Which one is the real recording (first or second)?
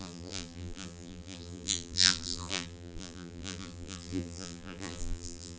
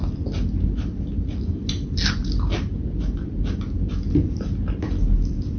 second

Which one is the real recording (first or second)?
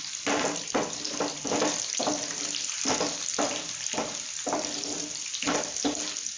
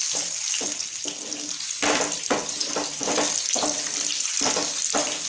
second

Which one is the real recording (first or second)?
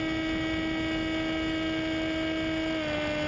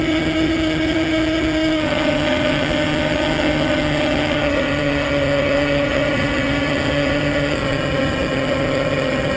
first